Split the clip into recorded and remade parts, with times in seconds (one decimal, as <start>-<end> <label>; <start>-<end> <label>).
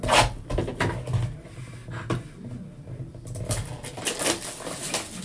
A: 0.0-5.2 recorded